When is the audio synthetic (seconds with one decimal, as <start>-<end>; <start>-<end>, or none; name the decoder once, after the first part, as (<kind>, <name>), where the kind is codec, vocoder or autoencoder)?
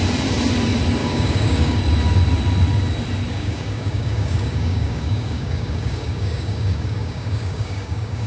1.0-1.8 (codec, DAC); 3.3-8.3